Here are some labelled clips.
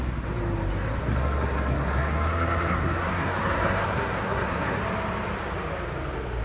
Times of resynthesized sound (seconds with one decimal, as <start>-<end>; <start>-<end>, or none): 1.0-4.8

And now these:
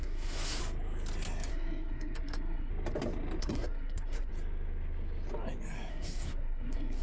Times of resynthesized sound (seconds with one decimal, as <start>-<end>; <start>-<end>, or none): 0.0-0.6; 1.5-2.7; 3.4-4.3; 5.9-7.0

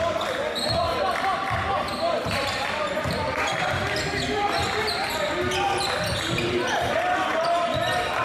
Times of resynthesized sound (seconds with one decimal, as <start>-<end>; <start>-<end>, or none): none

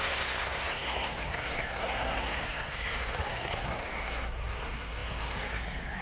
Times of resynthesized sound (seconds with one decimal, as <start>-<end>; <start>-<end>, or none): 0.0-6.0